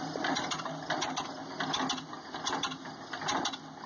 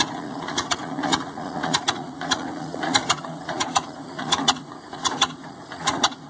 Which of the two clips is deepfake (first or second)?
second